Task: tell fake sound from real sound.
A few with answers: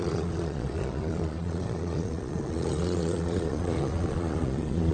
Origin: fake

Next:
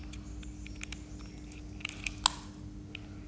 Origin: real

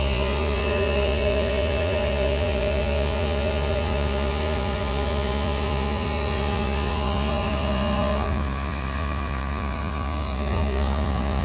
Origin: fake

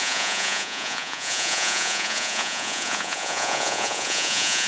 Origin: fake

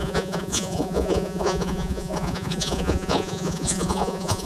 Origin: fake